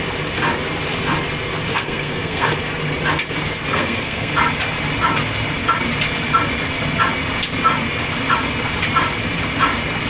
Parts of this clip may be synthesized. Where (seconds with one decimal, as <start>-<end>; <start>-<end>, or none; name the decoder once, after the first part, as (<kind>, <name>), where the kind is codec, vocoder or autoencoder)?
1.7-2.6 (codec, SNAC); 3.7-4.3